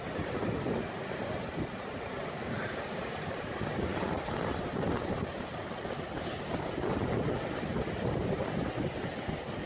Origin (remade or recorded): recorded